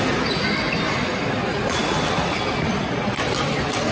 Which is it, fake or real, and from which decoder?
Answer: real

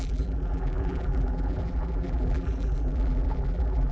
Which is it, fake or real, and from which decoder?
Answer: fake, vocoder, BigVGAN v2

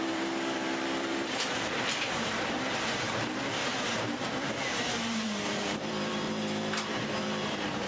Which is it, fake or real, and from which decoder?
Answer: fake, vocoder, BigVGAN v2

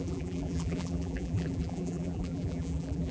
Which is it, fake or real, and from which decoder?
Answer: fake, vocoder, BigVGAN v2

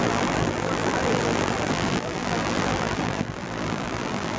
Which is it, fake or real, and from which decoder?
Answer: fake, vocoder, BigVGAN v2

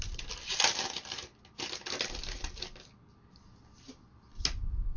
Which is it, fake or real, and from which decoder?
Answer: real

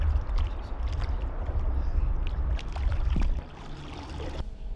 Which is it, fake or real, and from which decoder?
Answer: fake, vocoder, BigVGAN v2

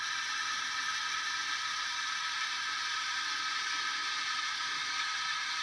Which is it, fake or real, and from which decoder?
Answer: fake, vocoder, BigVGAN v2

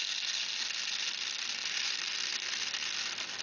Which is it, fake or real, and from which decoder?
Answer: real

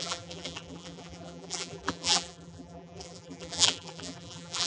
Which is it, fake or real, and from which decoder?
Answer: fake, vocoder, BigVGAN v2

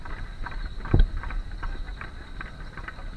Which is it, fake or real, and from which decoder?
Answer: real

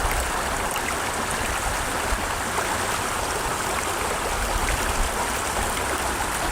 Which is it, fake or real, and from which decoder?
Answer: real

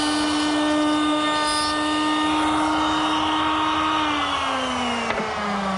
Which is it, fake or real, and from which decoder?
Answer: real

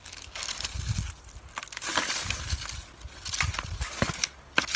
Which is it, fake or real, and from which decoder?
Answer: real